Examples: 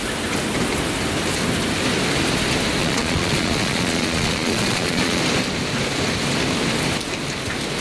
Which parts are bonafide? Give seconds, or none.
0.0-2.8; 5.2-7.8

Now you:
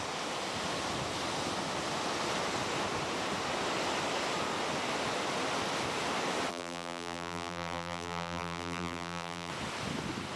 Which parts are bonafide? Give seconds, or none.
0.0-6.5; 9.5-10.4

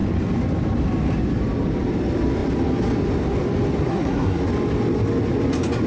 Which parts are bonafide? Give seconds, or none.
0.0-3.8; 4.4-5.9